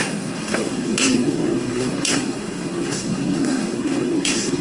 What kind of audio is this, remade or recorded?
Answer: remade